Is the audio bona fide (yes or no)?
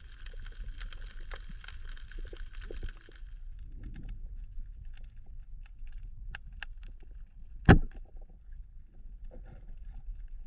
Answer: yes